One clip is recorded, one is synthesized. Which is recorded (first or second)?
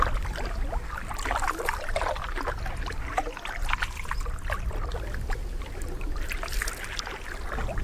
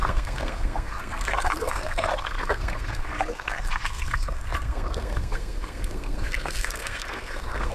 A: first